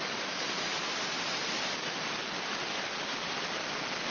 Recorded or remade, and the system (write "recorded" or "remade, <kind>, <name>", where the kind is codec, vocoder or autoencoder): recorded